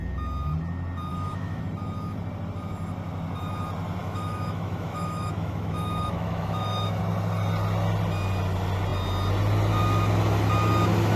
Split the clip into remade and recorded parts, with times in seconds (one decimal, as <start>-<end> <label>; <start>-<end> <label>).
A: 0.0-1.1 recorded; 1.1-1.6 remade; 1.6-4.0 recorded; 4.0-7.0 remade; 7.0-11.2 recorded